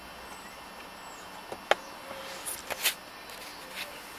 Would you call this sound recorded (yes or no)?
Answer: yes